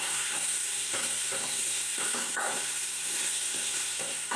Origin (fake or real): fake